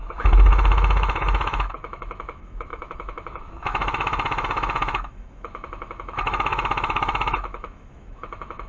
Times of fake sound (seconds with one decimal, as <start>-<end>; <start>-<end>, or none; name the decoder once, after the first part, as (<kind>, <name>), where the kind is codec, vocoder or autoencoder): 0.0-8.7 (autoencoder, DAC-VAE)